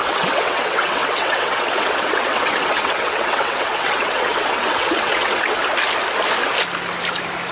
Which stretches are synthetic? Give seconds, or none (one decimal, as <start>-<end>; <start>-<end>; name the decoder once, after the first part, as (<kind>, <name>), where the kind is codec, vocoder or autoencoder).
0.0-5.6 (vocoder, WaveNeXt)